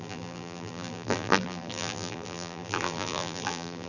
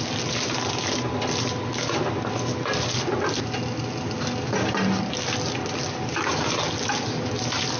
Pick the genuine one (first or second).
second